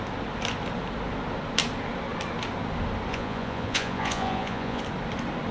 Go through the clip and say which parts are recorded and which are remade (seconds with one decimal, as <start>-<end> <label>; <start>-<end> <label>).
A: 0.0-3.1 recorded; 3.1-4.8 remade; 4.8-5.5 recorded

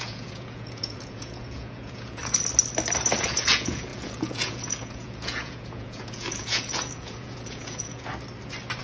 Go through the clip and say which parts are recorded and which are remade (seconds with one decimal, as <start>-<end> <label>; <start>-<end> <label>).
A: 0.0-2.2 remade; 2.2-3.2 recorded; 3.2-8.1 remade; 8.1-8.8 recorded

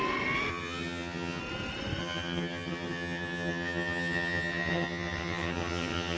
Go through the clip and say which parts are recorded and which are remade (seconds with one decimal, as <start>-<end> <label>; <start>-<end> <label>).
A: 0.0-0.5 recorded; 0.5-1.4 remade; 1.4-2.0 recorded; 2.0-6.2 remade

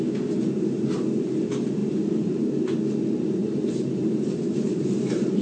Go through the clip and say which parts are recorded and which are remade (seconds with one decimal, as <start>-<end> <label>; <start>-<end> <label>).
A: 0.0-1.8 recorded; 1.8-2.8 remade; 2.8-3.4 recorded; 3.4-5.4 remade